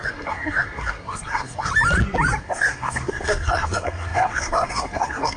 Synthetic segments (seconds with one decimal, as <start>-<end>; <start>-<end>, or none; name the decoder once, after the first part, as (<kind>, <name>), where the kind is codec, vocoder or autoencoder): 0.0-1.7 (codec, SNAC); 2.4-5.4